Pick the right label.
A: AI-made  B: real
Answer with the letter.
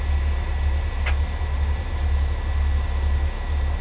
B